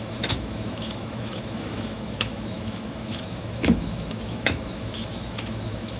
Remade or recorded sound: remade